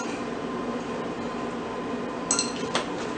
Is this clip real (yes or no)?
yes